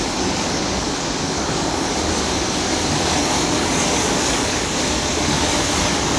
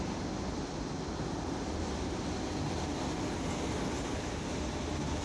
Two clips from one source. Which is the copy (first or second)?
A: first